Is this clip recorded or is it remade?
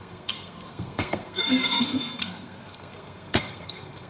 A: remade